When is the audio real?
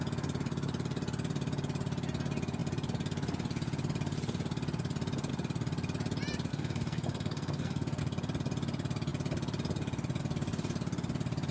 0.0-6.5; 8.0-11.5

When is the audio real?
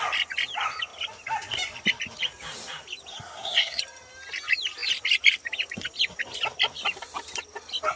0.0-3.1; 3.8-8.0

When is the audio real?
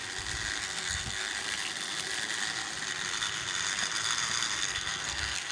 0.0-0.6; 1.3-4.6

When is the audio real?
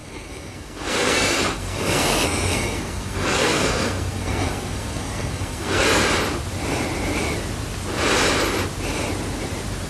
6.0-9.9